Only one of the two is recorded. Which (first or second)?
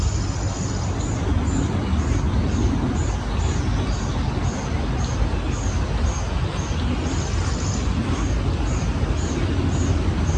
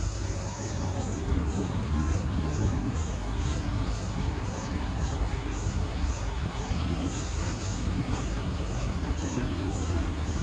first